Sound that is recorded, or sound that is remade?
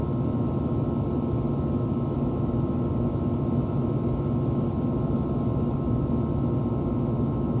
recorded